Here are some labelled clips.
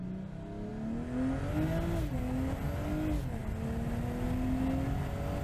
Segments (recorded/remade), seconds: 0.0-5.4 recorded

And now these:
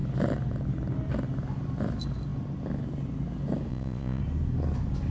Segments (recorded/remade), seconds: 0.0-3.7 recorded; 3.7-4.2 remade; 4.2-5.1 recorded

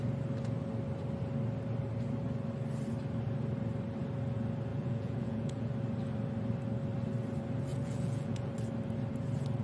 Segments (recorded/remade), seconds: 0.0-4.7 recorded; 4.7-5.7 remade; 5.7-7.7 recorded; 7.7-8.5 remade; 8.5-9.6 recorded

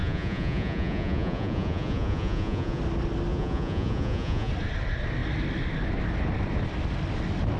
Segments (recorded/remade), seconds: 0.0-2.8 remade; 2.8-3.3 recorded; 3.3-4.5 remade; 4.5-7.6 recorded